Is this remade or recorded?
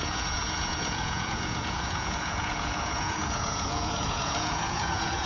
remade